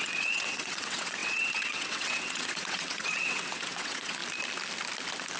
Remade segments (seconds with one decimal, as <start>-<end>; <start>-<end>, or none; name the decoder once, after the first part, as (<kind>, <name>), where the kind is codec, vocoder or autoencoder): 0.0-4.2 (vocoder, WaveNeXt)